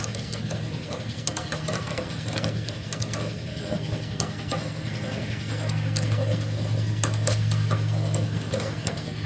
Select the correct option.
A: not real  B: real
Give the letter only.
A